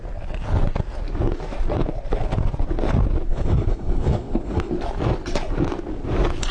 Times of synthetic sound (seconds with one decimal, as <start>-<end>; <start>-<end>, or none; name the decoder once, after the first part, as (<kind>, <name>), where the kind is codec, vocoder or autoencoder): 3.3-4.7 (codec, SNAC)

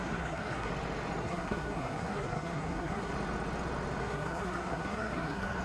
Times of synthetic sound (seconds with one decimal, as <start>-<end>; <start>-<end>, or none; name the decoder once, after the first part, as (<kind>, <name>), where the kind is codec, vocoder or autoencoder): 0.0-0.7 (codec, SNAC); 1.2-3.1; 4.0-5.6

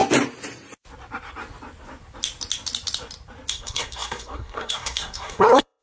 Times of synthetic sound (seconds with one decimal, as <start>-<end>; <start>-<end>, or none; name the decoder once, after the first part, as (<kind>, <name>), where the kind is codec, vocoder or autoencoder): 3.5-5.8 (codec, SNAC)

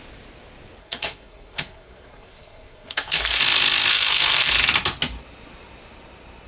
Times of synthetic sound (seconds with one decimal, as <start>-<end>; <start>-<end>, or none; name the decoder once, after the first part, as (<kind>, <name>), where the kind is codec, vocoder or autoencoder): 0.8-3.4 (codec, SNAC); 3.9-4.5

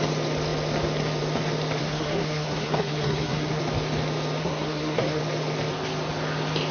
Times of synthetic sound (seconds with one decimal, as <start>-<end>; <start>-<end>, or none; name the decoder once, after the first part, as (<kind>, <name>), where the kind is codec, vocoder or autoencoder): 1.8-3.6 (codec, SNAC); 4.4-5.2

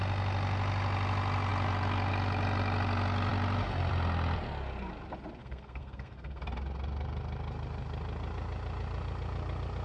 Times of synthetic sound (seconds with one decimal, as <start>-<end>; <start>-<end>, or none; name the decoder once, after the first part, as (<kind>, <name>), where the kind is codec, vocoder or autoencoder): 5.4-6.4 (codec, SNAC)

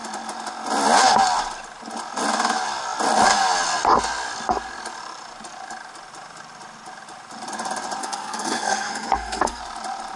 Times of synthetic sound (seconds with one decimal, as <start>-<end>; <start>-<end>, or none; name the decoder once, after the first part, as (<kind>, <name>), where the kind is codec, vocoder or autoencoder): 8.0-9.6 (codec, SNAC)